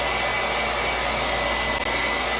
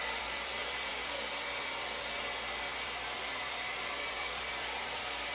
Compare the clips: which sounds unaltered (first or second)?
first